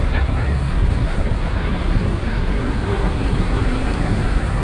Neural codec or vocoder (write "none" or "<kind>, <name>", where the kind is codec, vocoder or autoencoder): codec, SNAC